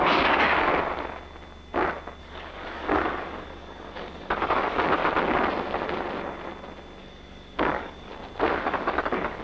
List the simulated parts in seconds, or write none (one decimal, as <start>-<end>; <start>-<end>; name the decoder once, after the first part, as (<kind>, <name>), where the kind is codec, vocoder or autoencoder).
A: 0.0-0.7 (codec, DAC); 2.2-5.0; 7.0-8.1; 8.6-9.4